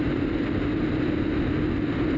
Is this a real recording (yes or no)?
yes